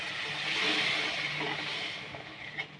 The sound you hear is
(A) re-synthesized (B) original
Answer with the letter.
B